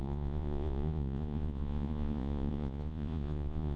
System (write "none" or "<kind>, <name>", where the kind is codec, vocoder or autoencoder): vocoder, Vocos